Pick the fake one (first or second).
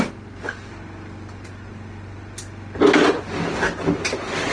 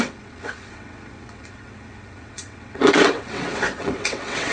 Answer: second